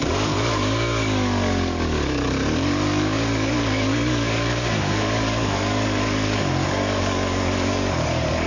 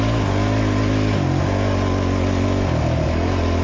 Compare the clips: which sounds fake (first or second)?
first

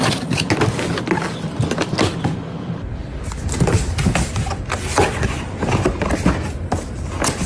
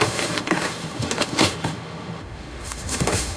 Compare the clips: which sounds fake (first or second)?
second